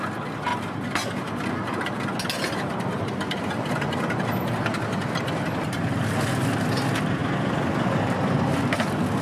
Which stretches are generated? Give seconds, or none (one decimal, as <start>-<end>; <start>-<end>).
7.2-8.0